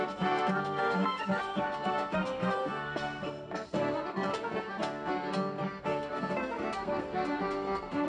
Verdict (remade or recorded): remade